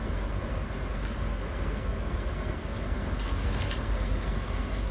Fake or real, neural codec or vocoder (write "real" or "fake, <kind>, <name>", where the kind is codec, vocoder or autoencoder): fake, codec, SNAC